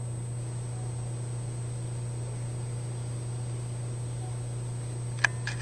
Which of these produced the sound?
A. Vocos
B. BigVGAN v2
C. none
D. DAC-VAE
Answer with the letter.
C